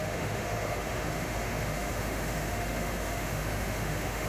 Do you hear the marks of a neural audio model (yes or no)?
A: yes